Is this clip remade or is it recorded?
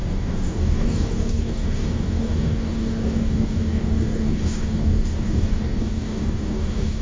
remade